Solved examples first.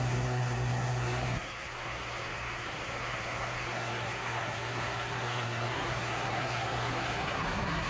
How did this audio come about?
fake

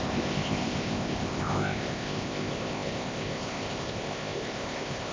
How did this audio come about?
fake